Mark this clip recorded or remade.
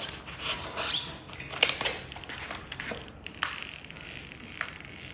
recorded